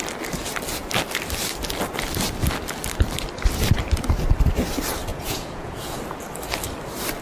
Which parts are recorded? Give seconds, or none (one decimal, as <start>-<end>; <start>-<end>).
0.0-5.1; 6.0-7.2